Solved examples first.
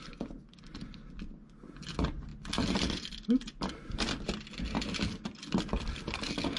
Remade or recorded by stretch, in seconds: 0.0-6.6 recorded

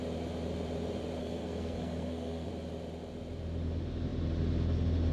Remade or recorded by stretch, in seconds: 0.0-1.2 recorded; 1.2-2.5 remade; 2.5-5.1 recorded

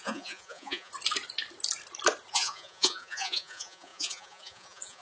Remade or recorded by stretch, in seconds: 0.0-0.9 remade; 0.9-2.3 recorded; 2.3-5.0 remade

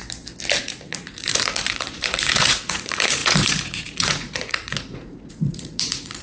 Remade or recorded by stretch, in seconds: 0.0-0.6 recorded; 0.6-6.2 remade